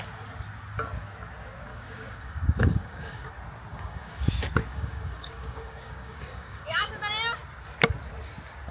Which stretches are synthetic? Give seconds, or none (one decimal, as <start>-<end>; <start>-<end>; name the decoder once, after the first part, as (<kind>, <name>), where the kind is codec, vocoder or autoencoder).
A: 1.7-3.3 (codec, DAC); 3.7-4.3; 4.7-6.9